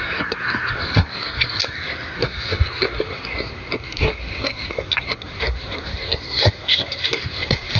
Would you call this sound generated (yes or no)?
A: yes